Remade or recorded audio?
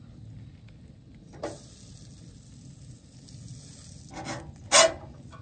recorded